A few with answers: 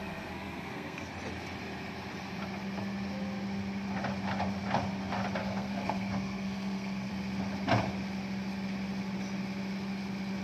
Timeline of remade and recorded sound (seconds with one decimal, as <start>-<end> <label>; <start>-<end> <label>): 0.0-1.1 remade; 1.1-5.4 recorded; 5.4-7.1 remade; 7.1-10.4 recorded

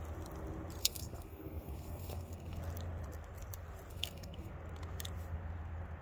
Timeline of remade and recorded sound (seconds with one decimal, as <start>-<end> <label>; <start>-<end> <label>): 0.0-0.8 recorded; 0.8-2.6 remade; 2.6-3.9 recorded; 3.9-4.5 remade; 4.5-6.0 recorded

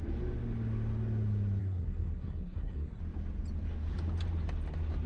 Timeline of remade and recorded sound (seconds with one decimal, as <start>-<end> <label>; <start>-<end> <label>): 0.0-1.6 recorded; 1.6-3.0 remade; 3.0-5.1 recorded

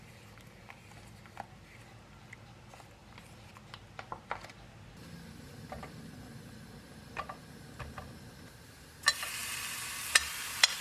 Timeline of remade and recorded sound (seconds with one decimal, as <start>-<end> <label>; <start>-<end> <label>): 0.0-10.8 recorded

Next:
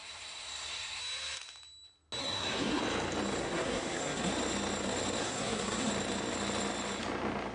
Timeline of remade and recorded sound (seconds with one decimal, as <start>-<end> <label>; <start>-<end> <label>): 0.0-1.0 remade; 1.0-2.2 recorded; 2.2-2.8 remade; 2.8-3.4 recorded; 3.4-4.3 remade; 4.3-5.2 recorded; 5.2-5.9 remade; 5.9-7.5 recorded

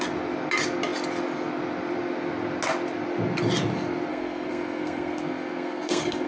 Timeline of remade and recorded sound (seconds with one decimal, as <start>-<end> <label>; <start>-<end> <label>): 0.0-4.1 recorded; 4.1-6.3 remade

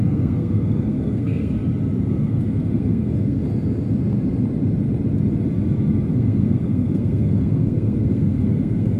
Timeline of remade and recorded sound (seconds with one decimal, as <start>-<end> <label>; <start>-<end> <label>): 0.0-1.6 remade; 1.6-2.1 recorded; 2.1-3.4 remade; 3.4-6.1 recorded; 6.1-9.0 remade